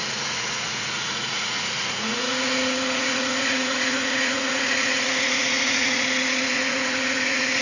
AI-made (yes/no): yes